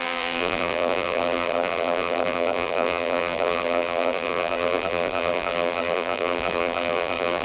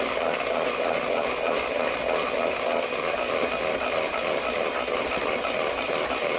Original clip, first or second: second